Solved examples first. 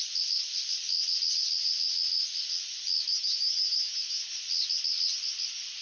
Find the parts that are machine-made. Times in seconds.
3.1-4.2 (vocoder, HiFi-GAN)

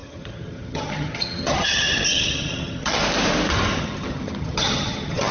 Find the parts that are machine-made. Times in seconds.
0.0-3.0 (vocoder, HiFi-GAN); 3.8-5.3

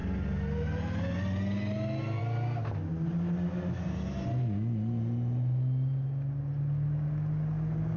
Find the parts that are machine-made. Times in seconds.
none

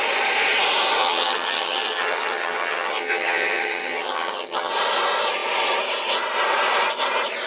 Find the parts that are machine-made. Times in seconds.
1.0-4.7 (vocoder, HiFi-GAN)

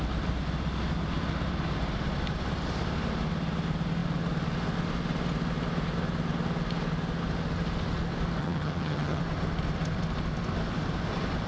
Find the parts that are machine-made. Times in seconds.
8.4-9.2 (vocoder, HiFi-GAN)